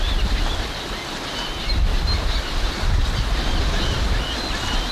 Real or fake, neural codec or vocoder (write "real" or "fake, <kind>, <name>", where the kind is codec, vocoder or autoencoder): real